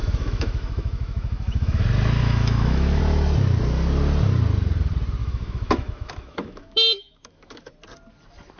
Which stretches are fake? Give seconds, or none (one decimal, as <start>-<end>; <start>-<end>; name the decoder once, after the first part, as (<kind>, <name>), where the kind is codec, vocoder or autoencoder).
0.0-1.8 (autoencoder, DAC-VAE); 2.2-3.0; 5.2-7.7